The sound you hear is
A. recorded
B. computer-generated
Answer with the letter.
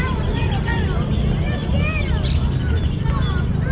A